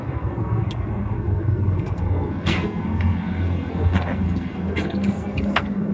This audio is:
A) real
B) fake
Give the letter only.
B